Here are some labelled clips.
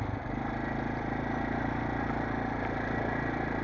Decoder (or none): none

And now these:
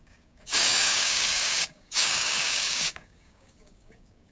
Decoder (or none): codec, DAC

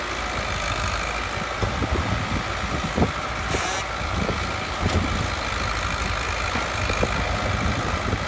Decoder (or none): none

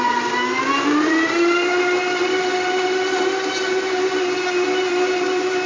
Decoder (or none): none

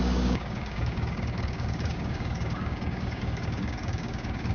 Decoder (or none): codec, DAC